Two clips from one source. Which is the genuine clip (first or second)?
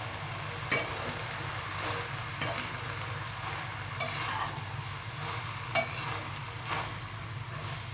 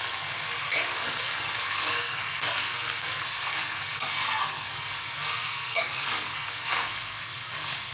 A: first